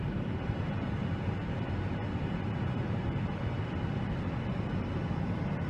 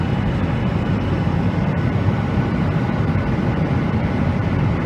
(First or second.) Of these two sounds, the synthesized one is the second